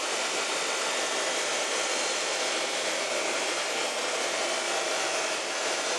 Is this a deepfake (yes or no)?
yes